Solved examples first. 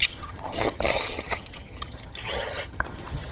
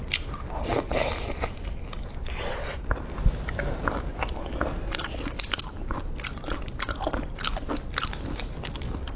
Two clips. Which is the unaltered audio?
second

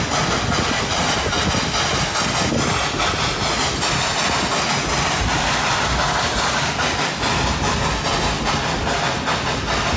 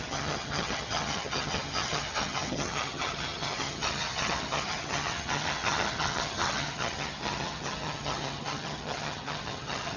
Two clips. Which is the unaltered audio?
first